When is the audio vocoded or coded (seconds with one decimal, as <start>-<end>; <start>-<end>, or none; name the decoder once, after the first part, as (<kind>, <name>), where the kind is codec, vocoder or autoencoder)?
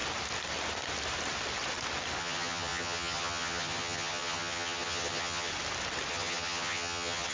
2.2-5.5 (vocoder, HiFi-GAN); 6.1-7.3